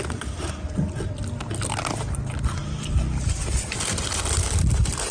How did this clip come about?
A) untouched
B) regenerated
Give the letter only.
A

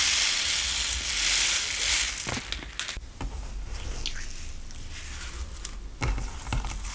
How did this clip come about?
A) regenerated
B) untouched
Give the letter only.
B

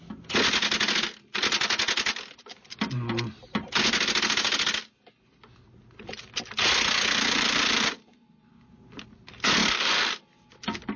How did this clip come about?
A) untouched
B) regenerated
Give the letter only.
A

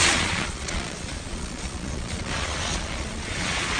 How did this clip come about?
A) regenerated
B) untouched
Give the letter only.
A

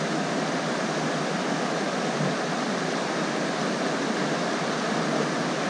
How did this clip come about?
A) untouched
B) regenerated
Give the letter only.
A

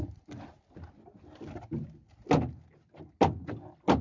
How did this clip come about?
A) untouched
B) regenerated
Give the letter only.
A